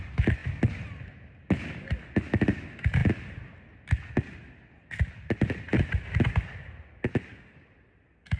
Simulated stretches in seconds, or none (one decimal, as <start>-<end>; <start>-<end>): none